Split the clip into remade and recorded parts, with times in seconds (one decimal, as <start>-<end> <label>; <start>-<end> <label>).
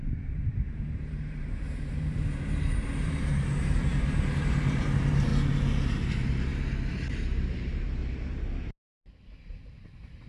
0.0-5.3 remade; 5.3-6.1 recorded; 6.1-6.5 remade; 6.5-7.1 recorded; 7.1-8.0 remade; 8.0-9.5 recorded; 9.5-10.3 remade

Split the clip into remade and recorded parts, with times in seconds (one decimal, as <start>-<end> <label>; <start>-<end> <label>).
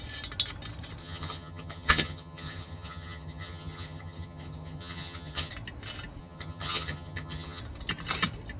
0.0-1.0 recorded; 1.0-5.5 remade; 5.5-6.2 recorded; 6.2-7.6 remade; 7.6-8.6 recorded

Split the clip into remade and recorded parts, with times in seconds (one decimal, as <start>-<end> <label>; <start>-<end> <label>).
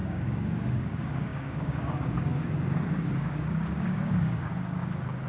0.0-4.8 remade; 4.8-5.3 recorded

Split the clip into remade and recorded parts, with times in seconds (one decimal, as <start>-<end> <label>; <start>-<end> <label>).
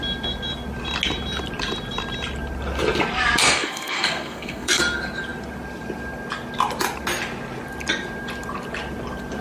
0.0-3.4 recorded; 3.4-4.8 remade; 4.8-9.4 recorded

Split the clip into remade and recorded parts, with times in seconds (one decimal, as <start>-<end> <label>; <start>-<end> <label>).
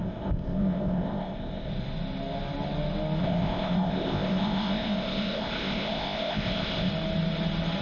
0.0-1.7 remade; 1.7-3.2 recorded; 3.2-6.9 remade; 6.9-7.8 recorded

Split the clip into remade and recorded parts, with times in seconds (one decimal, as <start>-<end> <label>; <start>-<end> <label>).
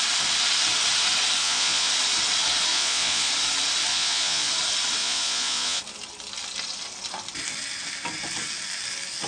0.0-1.4 recorded; 1.4-1.9 remade; 1.9-2.7 recorded; 2.7-3.3 remade; 3.3-3.9 recorded; 3.9-4.5 remade; 4.5-5.0 recorded; 5.0-5.8 remade; 5.8-9.3 recorded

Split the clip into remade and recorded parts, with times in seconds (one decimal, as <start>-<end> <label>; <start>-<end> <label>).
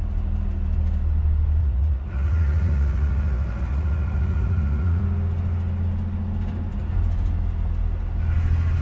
0.0-1.6 recorded; 1.6-5.0 remade; 5.0-8.8 recorded